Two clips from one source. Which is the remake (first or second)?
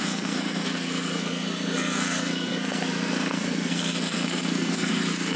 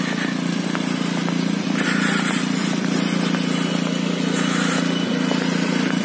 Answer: first